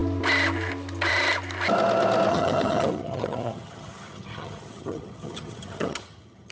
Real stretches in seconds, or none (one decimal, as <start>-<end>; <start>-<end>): 0.0-2.3